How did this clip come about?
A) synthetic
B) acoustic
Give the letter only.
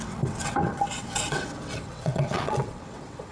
A